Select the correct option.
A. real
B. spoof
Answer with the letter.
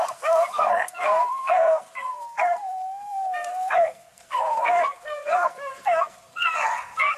B